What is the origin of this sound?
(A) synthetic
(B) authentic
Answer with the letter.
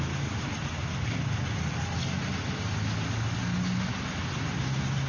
B